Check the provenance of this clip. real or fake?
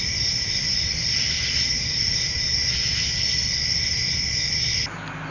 real